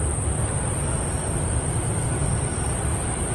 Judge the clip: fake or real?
real